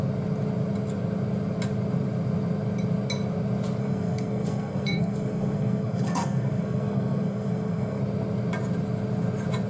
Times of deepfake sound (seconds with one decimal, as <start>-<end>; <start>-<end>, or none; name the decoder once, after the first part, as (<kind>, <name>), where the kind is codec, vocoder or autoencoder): 3.8-8.0 (codec, SNAC)